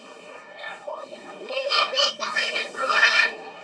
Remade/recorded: remade